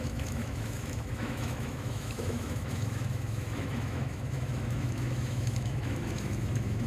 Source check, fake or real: fake